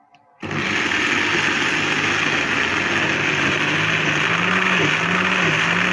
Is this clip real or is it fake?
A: real